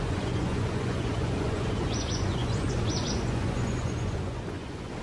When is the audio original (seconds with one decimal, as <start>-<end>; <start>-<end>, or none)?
none